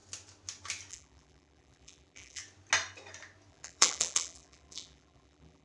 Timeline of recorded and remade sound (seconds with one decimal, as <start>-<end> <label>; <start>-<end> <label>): 0.0-0.9 recorded; 0.9-2.4 remade; 2.4-3.5 recorded; 3.5-5.6 remade